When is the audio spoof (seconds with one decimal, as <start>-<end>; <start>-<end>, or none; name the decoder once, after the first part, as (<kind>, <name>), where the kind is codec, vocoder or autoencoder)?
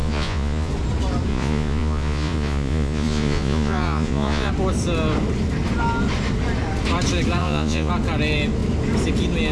0.0-0.7 (vocoder, Vocos); 1.3-4.5; 7.4-7.9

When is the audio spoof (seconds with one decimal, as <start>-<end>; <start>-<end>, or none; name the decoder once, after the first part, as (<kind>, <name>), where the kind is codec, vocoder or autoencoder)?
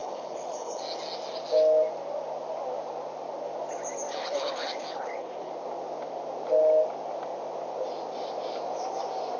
0.0-0.8 (codec, HILCodec); 4.2-5.5